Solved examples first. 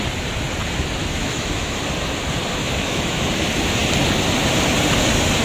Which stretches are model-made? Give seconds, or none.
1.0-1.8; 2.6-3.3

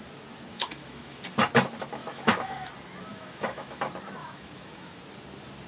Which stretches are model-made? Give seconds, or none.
0.5-1.2; 2.0-2.7; 3.1-3.8; 4.2-5.0

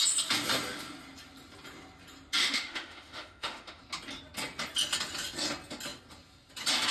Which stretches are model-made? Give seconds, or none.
2.4-3.8

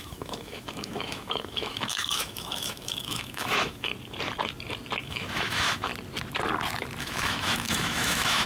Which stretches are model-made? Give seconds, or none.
0.0-3.9; 5.0-5.9; 7.0-8.5

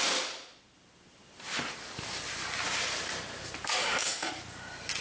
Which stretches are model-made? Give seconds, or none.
3.8-4.3

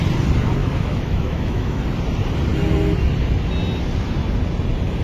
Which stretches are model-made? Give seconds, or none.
0.6-1.8

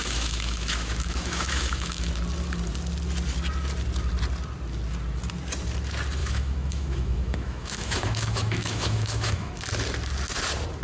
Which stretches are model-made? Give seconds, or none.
0.0-2.1; 6.2-9.5